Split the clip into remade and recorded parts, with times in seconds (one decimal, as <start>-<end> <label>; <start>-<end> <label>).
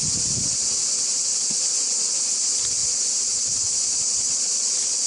0.0-5.1 recorded